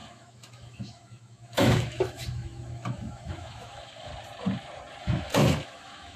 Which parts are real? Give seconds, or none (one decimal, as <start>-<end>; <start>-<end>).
4.1-5.0